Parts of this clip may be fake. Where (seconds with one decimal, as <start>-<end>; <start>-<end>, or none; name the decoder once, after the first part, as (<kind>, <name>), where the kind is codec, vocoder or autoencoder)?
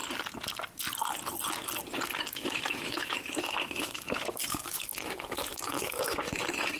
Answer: 2.3-6.8 (autoencoder, DAC-VAE)